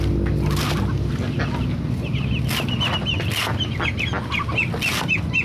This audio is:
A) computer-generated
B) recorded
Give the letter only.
B